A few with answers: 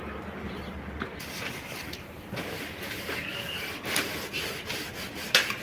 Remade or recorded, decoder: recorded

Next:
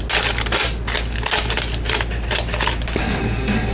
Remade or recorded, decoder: recorded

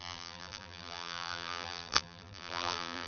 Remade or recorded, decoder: remade, vocoder, BigVGAN v2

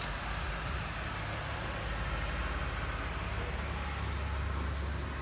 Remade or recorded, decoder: recorded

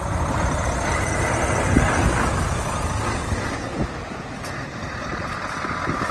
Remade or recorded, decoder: recorded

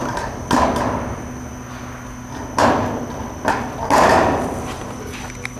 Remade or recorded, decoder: recorded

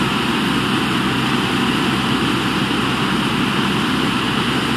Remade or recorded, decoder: recorded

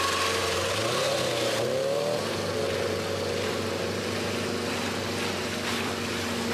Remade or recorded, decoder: recorded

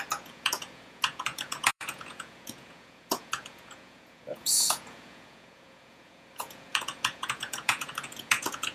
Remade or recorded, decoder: remade, vocoder, Vocos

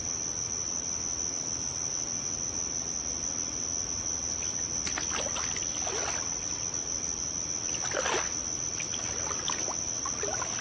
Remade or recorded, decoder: recorded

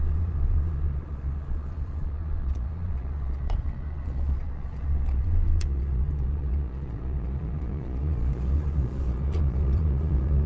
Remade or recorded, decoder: remade, vocoder, Vocos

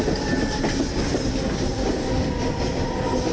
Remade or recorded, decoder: recorded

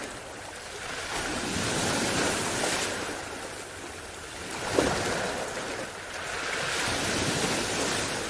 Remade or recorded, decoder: recorded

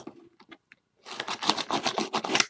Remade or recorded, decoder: recorded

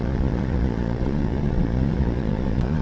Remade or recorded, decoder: remade, vocoder, Vocos